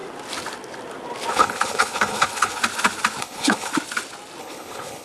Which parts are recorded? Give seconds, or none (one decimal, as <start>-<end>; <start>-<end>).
0.0-1.3; 2.6-3.2; 3.7-4.4